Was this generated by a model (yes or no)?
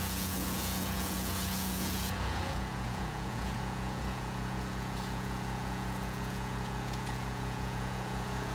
yes